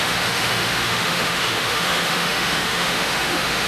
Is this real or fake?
fake